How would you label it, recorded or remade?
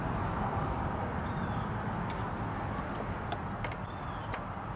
recorded